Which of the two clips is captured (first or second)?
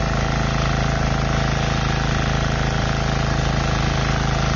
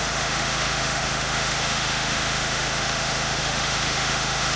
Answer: first